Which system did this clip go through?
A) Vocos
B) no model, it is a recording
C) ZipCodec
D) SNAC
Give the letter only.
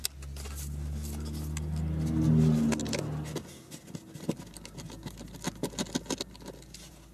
B